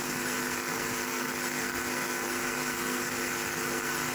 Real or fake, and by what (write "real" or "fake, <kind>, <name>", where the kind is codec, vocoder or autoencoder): fake, codec, SNAC